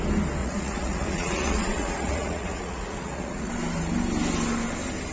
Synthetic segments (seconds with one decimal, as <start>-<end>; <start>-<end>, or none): 0.4-3.5